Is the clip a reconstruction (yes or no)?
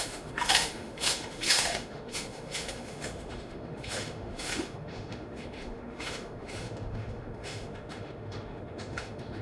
yes